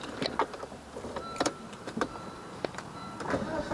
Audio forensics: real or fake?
fake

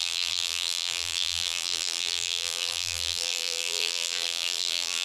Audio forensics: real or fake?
fake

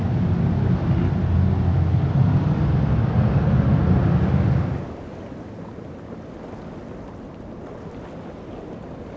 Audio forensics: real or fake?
real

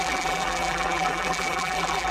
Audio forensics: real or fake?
fake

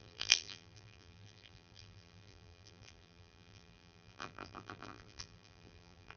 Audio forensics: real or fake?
fake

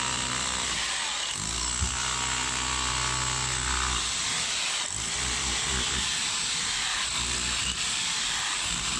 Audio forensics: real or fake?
real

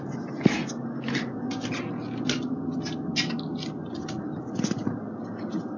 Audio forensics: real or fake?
real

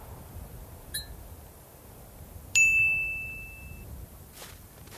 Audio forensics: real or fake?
real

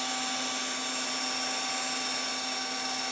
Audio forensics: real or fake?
real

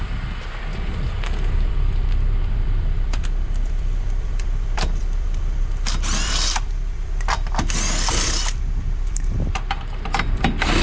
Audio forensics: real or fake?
fake